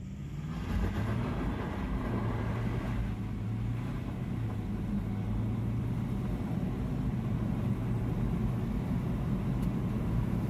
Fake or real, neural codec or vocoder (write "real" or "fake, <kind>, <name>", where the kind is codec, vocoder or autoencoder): real